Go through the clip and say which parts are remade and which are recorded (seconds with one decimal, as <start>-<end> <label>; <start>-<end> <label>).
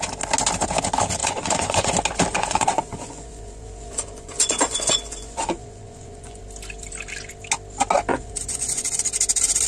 0.0-1.2 recorded; 1.2-1.9 remade; 1.9-2.3 recorded; 2.3-6.4 remade; 6.4-8.1 recorded; 8.1-9.0 remade; 9.0-9.7 recorded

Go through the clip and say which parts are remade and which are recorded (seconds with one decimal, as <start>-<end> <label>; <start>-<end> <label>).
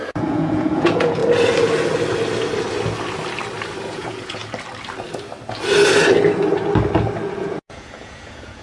0.0-1.2 remade; 1.2-3.8 recorded; 3.8-4.4 remade; 4.4-7.4 recorded; 7.4-8.6 remade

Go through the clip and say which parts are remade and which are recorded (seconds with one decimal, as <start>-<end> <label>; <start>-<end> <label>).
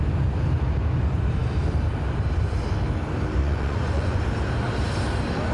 0.0-3.4 recorded; 3.4-4.2 remade; 4.2-5.5 recorded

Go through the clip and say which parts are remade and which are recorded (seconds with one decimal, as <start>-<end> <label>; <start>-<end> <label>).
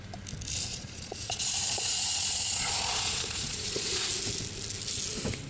0.0-0.7 recorded; 0.7-4.0 remade; 4.0-5.5 recorded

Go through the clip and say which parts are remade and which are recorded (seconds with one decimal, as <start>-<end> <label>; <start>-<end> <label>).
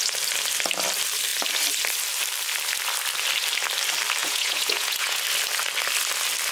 0.0-4.2 recorded; 4.2-5.2 remade; 5.2-6.5 recorded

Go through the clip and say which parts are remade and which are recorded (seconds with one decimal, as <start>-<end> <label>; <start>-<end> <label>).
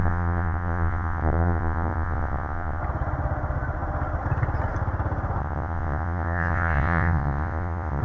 0.0-2.8 remade; 2.8-5.4 recorded; 5.4-8.0 remade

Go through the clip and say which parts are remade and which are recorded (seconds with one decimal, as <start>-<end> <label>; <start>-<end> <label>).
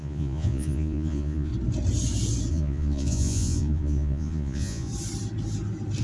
0.0-1.5 remade; 1.5-2.5 recorded; 2.5-4.9 remade; 4.9-6.0 recorded